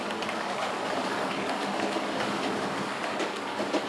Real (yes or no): no